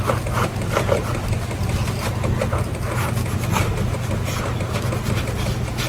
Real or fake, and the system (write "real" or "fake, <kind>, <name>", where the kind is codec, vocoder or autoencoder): real